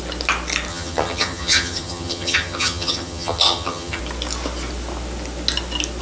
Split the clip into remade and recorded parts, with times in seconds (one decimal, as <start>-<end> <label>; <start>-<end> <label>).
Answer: 0.0-0.7 recorded; 0.7-4.0 remade; 4.0-6.0 recorded